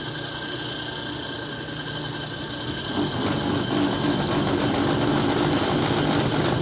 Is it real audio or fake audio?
real